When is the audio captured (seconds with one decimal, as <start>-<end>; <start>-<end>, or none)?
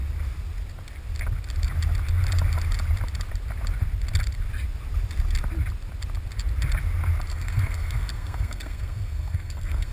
0.0-7.3